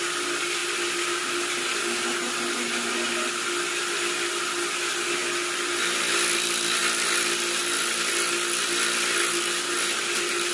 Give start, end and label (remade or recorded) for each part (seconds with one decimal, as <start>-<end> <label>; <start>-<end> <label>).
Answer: 0.0-10.5 recorded